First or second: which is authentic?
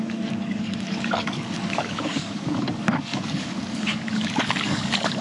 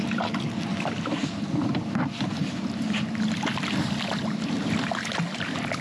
second